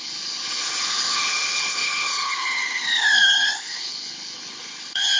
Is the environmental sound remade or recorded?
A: remade